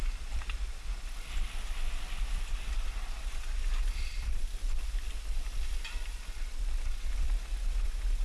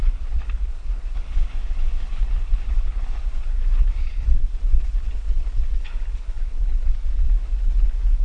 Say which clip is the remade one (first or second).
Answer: second